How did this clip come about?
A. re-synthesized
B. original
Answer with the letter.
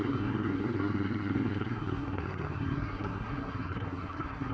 A